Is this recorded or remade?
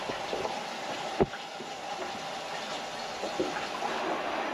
recorded